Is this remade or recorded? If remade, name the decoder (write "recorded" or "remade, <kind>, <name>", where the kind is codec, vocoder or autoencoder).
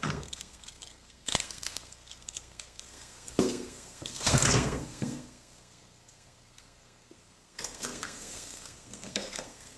remade, codec, SNAC